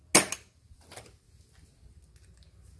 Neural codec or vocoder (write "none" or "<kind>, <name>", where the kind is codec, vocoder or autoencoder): none